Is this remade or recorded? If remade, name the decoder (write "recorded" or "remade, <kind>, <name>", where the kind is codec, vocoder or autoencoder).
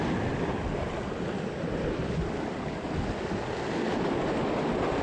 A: recorded